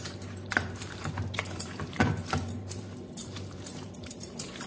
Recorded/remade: remade